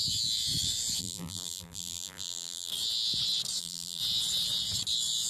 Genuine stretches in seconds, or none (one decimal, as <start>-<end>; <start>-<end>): 0.0-1.0; 2.7-3.6; 4.0-5.3